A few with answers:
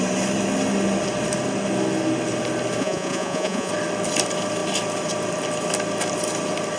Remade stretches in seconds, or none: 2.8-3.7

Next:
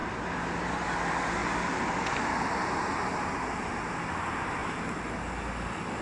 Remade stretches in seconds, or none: none

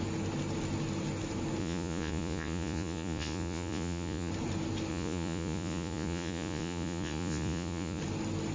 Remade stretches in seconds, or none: 1.6-4.3; 4.9-8.0

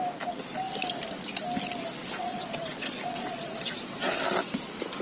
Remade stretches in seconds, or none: 2.0-4.1

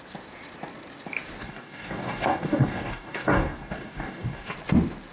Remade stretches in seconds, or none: 1.4-4.5

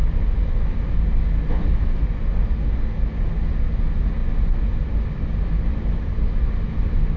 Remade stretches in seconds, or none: none

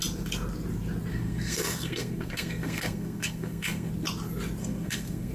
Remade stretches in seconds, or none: 1.1-3.9; 4.6-5.3